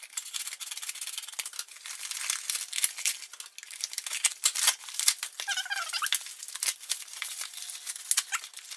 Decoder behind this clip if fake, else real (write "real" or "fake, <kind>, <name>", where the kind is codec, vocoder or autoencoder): real